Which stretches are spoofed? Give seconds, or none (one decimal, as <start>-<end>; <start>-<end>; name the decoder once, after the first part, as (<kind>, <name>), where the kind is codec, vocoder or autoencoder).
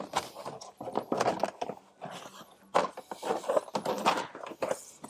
none